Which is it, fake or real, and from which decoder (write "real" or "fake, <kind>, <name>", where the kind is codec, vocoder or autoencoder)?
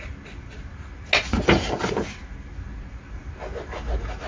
real